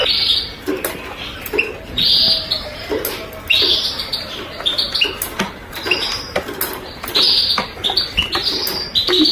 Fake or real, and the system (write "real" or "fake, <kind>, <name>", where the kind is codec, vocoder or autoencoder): real